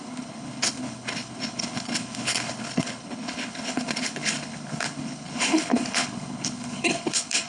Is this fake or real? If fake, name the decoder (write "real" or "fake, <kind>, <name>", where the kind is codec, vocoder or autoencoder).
fake, codec, HILCodec